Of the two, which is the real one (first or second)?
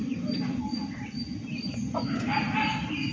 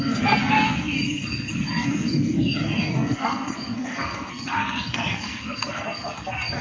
first